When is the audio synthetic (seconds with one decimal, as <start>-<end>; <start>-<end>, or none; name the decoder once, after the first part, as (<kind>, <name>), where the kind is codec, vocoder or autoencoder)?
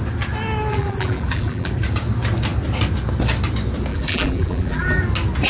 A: 0.7-1.7 (vocoder, BigVGAN v2); 3.9-5.0